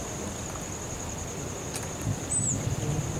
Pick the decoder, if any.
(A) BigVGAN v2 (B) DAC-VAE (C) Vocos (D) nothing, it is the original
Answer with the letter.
D